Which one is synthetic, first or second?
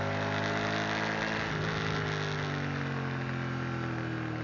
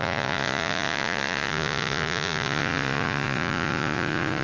second